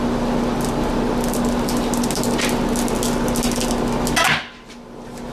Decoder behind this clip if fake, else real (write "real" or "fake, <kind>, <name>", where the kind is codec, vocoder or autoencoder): real